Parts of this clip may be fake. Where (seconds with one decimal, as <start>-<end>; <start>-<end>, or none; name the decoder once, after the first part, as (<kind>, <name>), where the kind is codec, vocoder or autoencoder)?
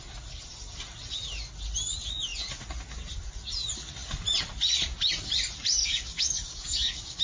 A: 5.8-7.2 (codec, DAC)